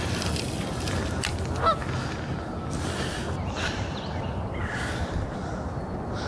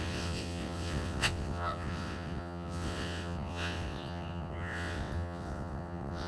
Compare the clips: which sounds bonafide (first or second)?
first